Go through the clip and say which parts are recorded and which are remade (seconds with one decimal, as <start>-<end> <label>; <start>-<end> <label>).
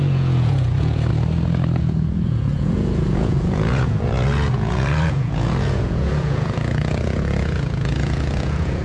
0.0-1.1 remade; 1.1-1.8 recorded; 1.8-8.8 remade